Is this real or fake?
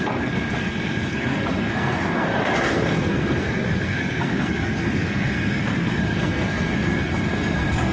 fake